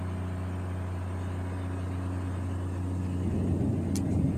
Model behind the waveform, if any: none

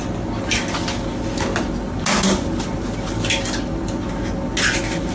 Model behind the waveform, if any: none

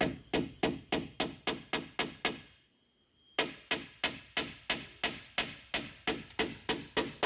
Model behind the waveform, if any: none